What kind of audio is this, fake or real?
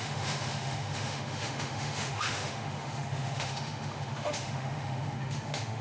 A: fake